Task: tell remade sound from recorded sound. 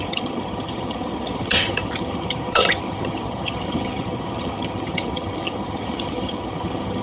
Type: remade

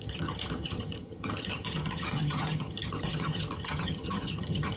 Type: remade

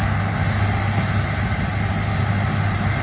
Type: recorded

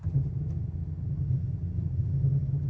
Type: remade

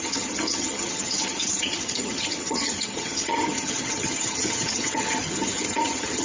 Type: remade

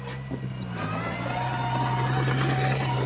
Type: recorded